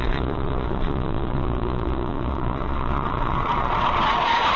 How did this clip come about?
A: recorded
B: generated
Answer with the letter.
B